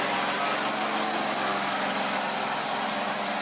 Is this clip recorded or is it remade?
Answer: recorded